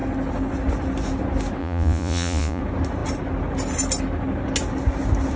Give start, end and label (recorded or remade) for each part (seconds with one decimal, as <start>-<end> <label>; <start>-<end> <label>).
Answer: 0.0-1.6 recorded; 1.6-2.6 remade; 2.6-5.4 recorded